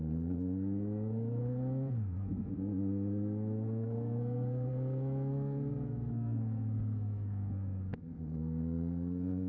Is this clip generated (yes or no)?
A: yes